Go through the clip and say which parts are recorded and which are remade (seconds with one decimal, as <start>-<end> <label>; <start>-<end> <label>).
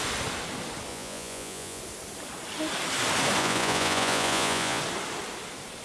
0.0-0.9 recorded; 0.9-1.8 remade; 1.8-3.4 recorded; 3.4-4.8 remade; 4.8-5.8 recorded